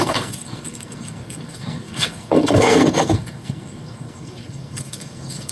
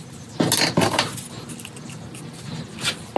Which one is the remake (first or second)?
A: first